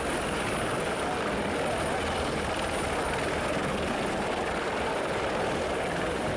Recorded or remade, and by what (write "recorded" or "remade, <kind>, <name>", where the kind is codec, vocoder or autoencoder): recorded